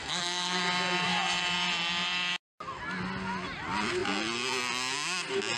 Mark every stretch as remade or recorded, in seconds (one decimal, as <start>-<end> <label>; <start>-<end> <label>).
0.0-0.6 remade; 0.6-5.6 recorded